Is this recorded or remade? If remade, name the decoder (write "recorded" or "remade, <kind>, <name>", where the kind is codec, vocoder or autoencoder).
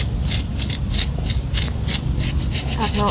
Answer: recorded